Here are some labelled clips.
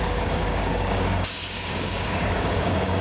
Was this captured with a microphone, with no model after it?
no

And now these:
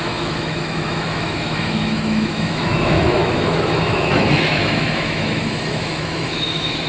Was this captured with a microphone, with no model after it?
no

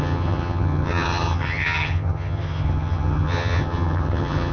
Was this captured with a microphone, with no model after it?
no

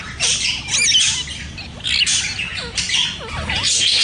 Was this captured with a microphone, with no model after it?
yes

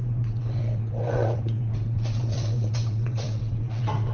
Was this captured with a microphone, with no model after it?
no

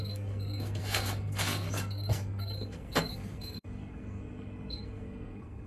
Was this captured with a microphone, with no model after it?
no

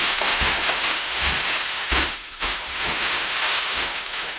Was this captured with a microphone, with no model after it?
no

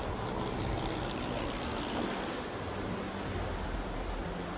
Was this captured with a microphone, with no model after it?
yes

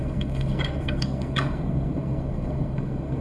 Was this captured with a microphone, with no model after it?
no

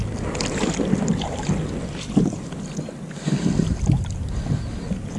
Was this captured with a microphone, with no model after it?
yes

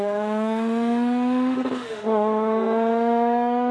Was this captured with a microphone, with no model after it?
no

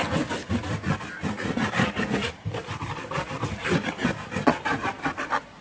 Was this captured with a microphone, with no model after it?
yes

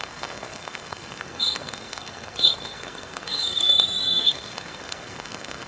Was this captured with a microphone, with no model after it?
no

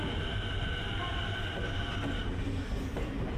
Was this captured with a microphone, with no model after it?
yes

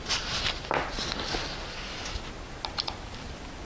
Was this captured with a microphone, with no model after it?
yes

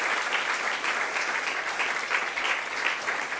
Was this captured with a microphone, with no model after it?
yes